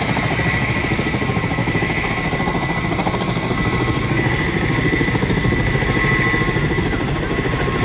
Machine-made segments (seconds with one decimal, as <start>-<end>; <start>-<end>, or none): 1.6-2.1

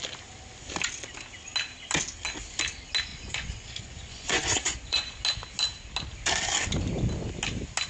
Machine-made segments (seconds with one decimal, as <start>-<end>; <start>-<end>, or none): 3.1-5.2

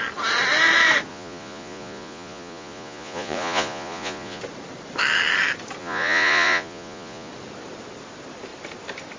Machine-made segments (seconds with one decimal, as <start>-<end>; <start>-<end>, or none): 1.1-4.4; 5.8-7.3

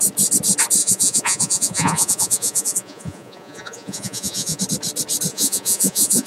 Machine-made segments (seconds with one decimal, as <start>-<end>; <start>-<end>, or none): 0.8-4.6; 5.3-6.3

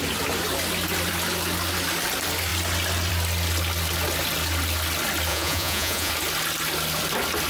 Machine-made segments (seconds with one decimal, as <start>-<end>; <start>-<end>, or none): 5.3-6.1